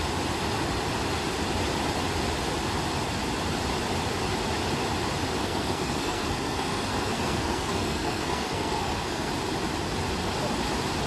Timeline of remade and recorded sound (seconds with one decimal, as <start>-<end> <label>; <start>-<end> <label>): 0.0-5.4 recorded; 5.4-9.3 remade; 9.3-11.1 recorded